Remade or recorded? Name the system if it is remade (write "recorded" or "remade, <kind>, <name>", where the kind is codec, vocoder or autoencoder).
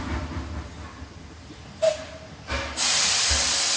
recorded